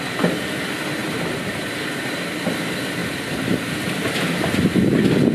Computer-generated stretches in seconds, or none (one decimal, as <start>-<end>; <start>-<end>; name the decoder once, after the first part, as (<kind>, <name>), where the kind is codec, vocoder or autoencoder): 1.0-1.9 (vocoder, BigVGAN v2); 3.0-4.2